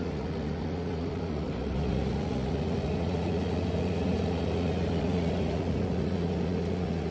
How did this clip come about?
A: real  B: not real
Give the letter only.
B